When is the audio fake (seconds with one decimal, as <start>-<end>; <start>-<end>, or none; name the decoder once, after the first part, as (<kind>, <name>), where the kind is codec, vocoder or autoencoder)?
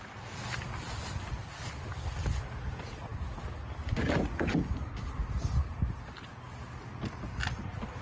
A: none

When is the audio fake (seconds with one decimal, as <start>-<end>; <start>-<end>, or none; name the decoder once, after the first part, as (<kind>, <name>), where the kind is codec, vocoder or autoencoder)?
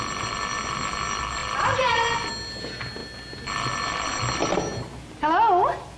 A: none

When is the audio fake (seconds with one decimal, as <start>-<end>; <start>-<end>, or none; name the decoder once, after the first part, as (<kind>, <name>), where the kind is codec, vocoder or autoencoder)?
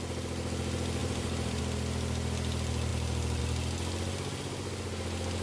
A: 1.0-1.6 (vocoder, BigVGAN v2)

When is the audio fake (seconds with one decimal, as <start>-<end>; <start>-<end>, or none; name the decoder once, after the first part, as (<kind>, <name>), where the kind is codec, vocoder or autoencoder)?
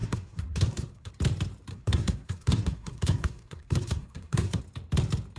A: 0.0-1.1 (codec, SNAC); 1.7-4.6